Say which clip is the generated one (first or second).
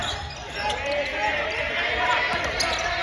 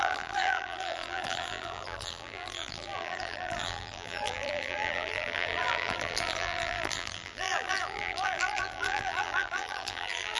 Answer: second